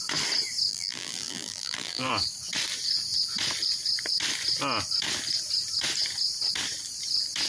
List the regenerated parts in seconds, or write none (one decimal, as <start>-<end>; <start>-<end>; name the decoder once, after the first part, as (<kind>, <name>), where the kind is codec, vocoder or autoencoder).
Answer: 0.7-2.1 (vocoder, BigVGAN v2)